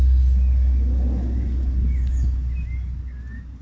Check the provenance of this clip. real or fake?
real